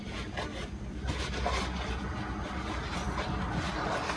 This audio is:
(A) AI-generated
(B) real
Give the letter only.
B